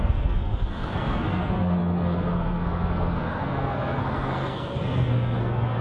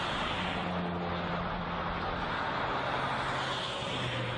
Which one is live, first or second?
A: second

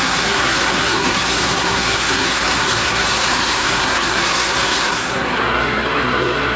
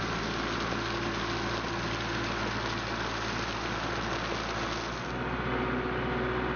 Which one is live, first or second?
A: second